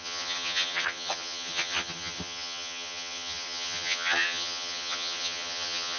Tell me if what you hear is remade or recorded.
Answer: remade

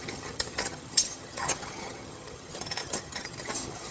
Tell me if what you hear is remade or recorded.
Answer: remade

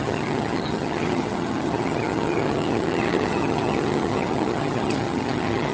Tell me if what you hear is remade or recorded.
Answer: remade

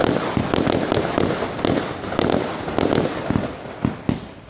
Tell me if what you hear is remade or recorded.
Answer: recorded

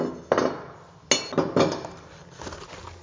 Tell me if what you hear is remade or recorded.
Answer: recorded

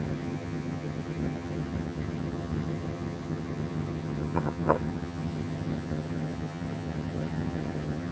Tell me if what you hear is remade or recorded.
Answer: remade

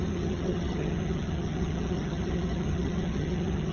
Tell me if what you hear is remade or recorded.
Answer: remade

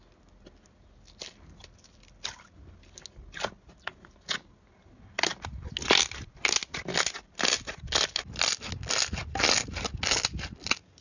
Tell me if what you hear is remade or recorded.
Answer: recorded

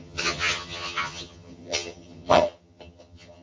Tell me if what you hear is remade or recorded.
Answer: remade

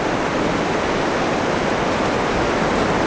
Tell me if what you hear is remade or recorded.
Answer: recorded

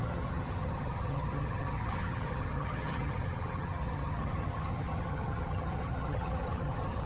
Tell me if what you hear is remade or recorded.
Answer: remade